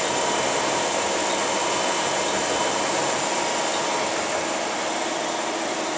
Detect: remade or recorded recorded